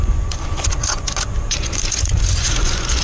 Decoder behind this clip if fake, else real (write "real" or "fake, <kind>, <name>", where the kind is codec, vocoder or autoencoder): fake, vocoder, Vocos